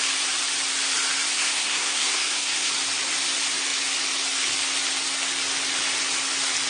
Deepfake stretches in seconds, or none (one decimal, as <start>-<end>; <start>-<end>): 1.3-2.7

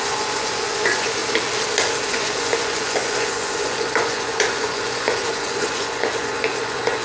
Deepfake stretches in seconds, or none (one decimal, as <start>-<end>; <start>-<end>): 0.0-1.2; 2.1-7.0